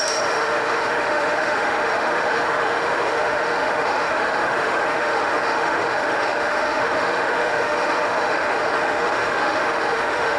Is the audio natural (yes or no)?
no